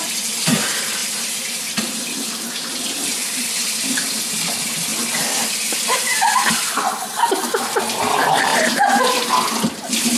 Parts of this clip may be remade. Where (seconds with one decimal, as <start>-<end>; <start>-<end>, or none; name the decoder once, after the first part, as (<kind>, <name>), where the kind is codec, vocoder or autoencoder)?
1.0-3.5 (vocoder, BigVGAN v2); 8.5-9.1